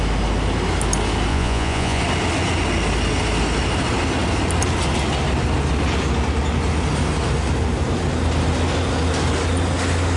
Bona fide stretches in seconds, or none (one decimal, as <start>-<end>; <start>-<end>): 0.0-1.3; 2.0-10.2